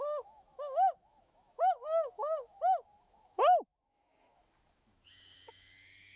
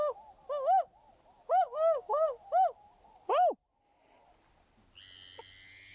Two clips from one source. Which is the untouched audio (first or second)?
second